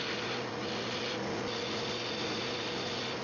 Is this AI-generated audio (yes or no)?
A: no